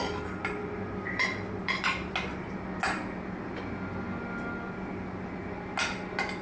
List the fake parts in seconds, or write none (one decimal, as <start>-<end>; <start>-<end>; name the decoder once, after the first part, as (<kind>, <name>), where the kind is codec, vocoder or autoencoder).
0.6-2.1 (vocoder, BigVGAN v2)